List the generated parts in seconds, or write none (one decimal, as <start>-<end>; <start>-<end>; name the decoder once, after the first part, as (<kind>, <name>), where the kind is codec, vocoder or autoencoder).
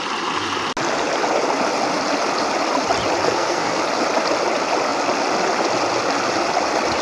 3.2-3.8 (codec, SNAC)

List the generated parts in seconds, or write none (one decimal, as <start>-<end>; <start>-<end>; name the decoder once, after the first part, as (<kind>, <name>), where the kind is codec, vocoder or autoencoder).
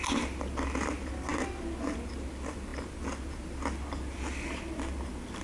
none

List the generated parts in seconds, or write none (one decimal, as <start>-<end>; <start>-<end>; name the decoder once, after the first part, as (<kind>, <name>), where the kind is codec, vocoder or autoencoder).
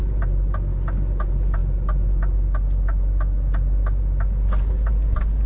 none